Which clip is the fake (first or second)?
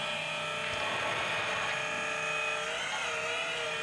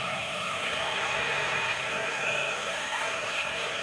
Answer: second